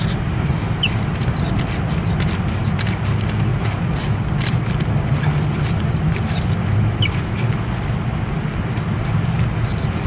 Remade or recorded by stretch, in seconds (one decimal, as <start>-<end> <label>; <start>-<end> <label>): 0.0-10.1 recorded